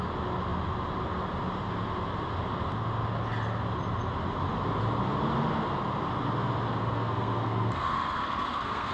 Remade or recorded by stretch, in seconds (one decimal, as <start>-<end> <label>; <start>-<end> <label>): 0.0-6.8 recorded; 6.8-8.9 remade